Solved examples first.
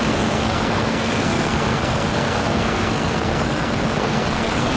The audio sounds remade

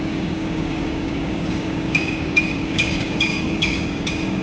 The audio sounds remade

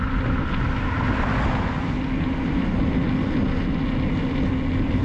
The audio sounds recorded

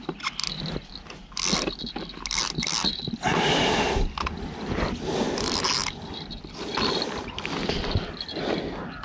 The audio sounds recorded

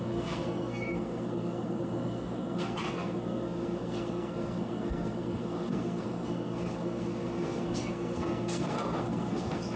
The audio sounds remade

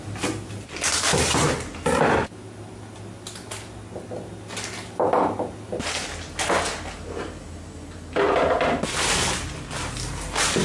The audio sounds recorded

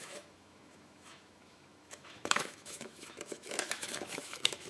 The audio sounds remade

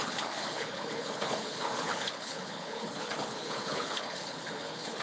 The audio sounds remade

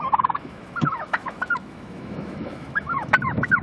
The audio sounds remade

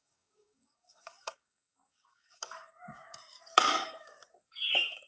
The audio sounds remade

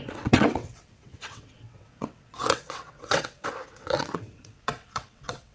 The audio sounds remade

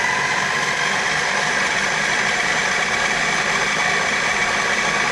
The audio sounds recorded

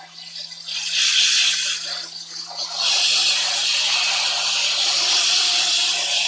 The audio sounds recorded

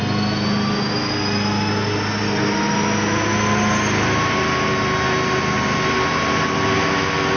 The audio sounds recorded